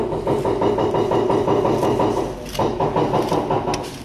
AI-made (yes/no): no